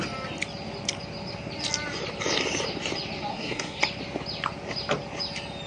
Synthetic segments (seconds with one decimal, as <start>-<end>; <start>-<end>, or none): 3.3-3.8